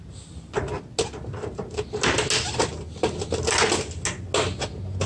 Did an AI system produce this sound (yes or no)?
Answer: no